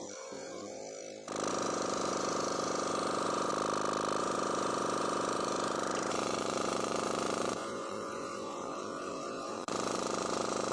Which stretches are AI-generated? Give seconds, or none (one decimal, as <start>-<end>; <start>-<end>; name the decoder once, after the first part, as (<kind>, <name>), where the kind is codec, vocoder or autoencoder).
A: 0.0-0.8 (vocoder, Vocos); 1.5-3.5; 4.2-10.7